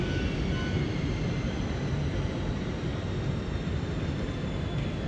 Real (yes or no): yes